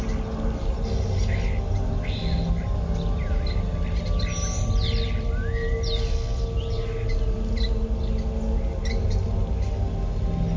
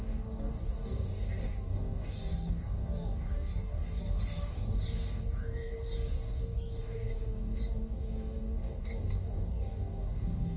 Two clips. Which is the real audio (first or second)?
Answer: first